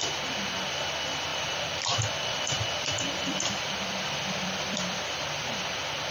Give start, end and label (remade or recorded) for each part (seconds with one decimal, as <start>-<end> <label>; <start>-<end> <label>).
0.0-1.3 recorded; 1.3-5.0 remade; 5.0-6.1 recorded